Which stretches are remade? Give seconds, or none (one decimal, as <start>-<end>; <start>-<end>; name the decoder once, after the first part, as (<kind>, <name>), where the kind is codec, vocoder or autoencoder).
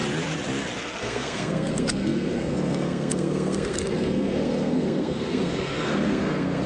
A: 1.0-6.7 (codec, SNAC)